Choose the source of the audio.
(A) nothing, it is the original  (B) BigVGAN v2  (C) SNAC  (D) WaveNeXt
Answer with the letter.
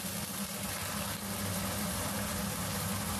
A